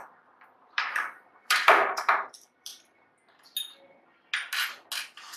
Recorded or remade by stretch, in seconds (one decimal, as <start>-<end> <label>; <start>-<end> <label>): 0.0-2.7 remade; 2.7-5.4 recorded